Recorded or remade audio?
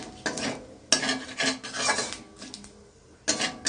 recorded